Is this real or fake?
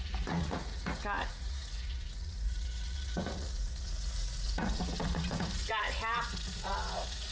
fake